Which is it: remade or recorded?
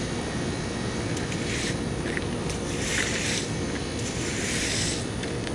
recorded